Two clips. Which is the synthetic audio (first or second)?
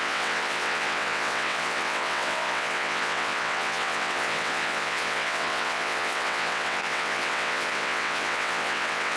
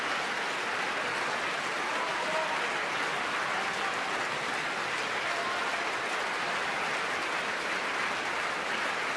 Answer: first